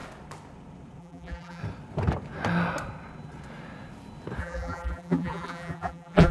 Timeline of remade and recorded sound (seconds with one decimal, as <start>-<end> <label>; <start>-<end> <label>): 0.0-1.0 recorded; 1.0-1.6 remade; 1.6-4.4 recorded; 4.4-6.3 remade